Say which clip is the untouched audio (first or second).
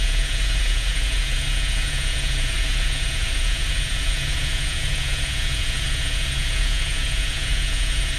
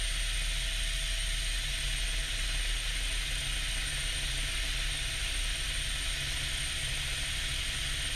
second